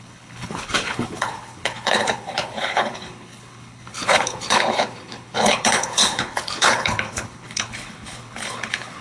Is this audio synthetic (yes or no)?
yes